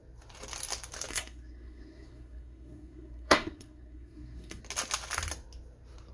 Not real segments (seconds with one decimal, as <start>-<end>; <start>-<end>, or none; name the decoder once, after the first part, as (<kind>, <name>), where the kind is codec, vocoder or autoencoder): 1.1-4.6 (codec, SNAC)